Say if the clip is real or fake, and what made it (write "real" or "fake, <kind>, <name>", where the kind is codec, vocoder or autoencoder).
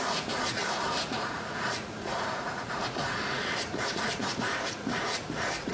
fake, vocoder, Vocos